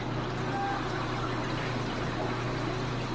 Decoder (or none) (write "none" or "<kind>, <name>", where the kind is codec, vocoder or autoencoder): none